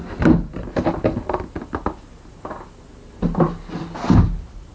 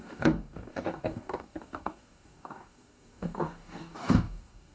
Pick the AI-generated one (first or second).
second